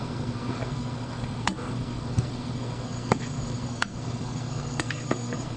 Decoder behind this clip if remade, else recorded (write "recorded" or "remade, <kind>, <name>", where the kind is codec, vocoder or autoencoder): remade, codec, SNAC